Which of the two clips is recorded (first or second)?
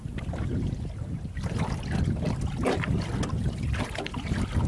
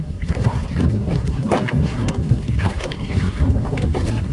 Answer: first